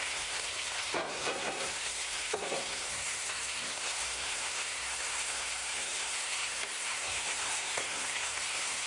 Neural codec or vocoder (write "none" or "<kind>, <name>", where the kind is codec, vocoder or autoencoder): codec, SNAC